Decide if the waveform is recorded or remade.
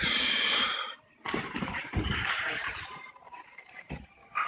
remade